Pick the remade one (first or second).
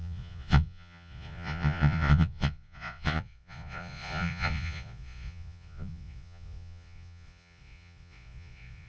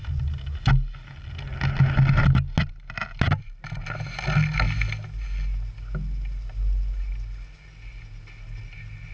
first